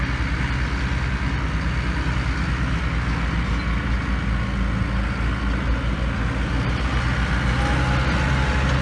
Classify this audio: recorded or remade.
recorded